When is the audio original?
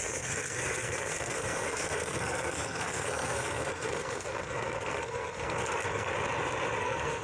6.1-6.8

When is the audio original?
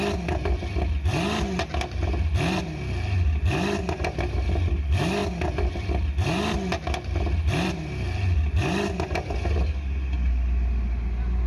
0.0-11.5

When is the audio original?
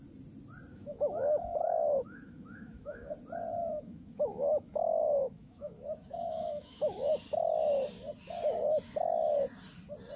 0.0-0.7; 3.1-3.6; 7.1-10.2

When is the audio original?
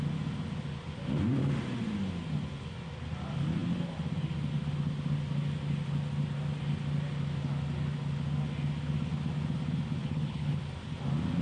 0.0-10.0; 10.6-11.4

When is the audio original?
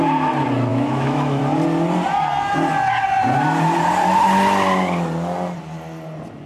0.0-0.7; 1.4-6.5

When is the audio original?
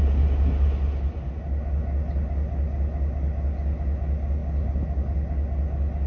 0.0-6.1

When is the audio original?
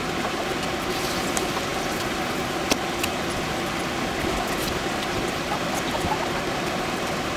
0.0-7.4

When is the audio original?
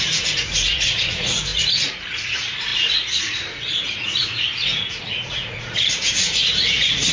none